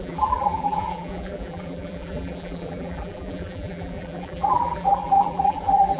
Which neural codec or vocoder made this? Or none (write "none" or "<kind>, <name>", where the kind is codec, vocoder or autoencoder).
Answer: vocoder, BigVGAN v2